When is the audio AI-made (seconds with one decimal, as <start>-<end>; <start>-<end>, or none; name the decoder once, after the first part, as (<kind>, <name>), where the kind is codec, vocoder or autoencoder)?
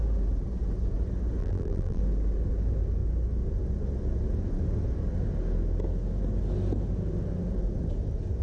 1.4-2.0 (vocoder, BigVGAN v2)